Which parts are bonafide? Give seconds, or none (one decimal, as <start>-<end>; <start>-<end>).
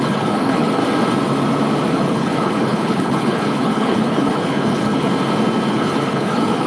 0.8-1.9; 5.1-5.7